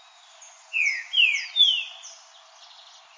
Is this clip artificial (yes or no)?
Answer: no